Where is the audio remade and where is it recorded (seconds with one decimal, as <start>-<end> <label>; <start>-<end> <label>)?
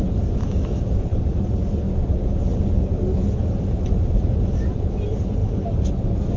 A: 0.0-6.4 recorded